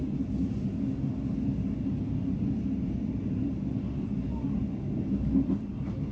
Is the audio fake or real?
real